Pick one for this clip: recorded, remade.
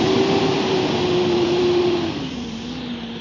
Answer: remade